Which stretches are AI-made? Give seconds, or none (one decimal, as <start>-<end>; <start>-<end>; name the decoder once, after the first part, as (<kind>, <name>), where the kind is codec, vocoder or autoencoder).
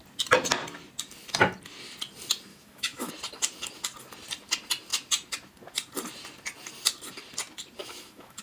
2.5-3.1 (autoencoder, DAC-VAE); 7.8-8.4